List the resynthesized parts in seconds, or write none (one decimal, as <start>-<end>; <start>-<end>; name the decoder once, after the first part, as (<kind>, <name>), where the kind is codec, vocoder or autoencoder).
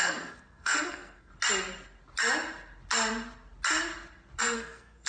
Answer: 0.0-1.3 (codec, SNAC); 4.4-5.1